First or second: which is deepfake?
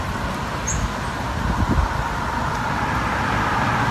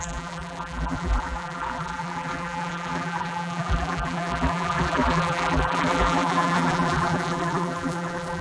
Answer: second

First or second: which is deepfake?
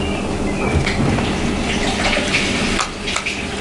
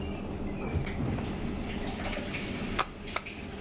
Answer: second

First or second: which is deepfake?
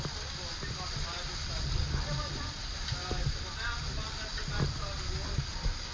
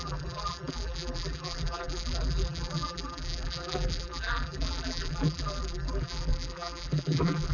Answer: second